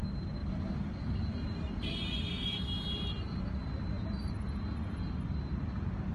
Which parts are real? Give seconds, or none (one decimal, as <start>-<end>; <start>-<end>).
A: 0.0-0.4; 1.4-6.1

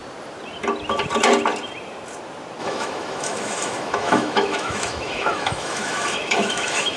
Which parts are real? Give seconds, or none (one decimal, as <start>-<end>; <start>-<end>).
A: 0.0-2.6